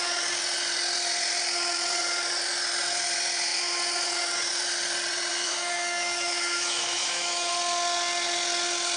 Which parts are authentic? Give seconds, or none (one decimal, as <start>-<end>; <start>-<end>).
0.0-5.3; 7.5-9.0